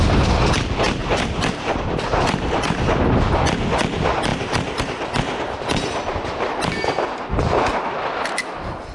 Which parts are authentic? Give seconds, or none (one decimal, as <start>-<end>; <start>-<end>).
0.0-1.0; 3.4-4.3; 4.8-8.9

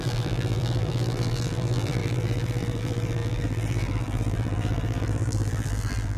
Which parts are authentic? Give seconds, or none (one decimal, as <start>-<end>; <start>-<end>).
none

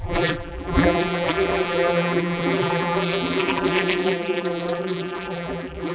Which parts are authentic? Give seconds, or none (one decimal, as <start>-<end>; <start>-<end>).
none